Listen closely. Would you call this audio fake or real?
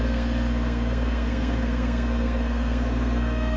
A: fake